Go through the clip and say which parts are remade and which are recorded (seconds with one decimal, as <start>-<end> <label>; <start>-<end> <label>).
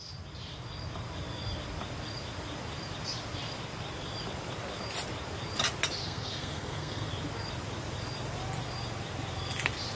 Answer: 0.0-6.0 recorded; 6.0-7.1 remade; 7.1-10.0 recorded